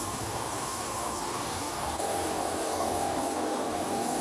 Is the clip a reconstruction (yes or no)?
yes